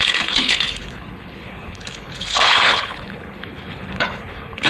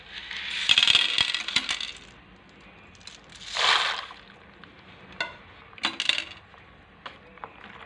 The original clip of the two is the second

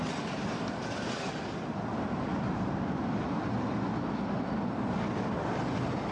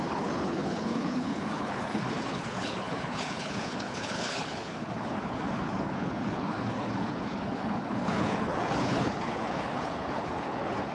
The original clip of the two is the first